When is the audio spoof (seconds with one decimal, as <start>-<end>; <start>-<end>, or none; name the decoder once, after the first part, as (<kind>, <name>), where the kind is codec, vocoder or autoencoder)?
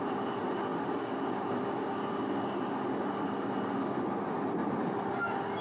4.6-5.1 (vocoder, BigVGAN v2)